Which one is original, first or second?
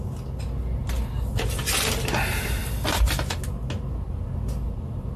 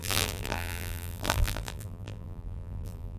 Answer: first